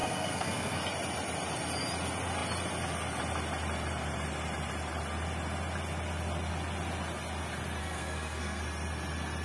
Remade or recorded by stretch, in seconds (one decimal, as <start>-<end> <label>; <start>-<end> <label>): 0.0-0.8 remade; 0.8-7.8 recorded; 7.8-8.6 remade; 8.6-9.4 recorded